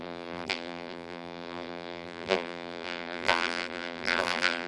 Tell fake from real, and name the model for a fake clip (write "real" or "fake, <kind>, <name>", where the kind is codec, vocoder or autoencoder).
fake, vocoder, BigVGAN v2